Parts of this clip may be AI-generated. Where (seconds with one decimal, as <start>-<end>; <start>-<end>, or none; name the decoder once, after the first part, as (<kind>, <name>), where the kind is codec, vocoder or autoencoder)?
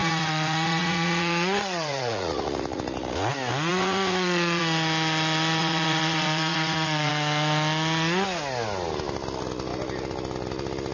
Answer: 0.0-3.3 (vocoder, Vocos); 3.7-4.6; 5.6-7.1